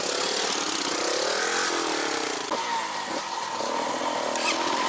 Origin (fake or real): real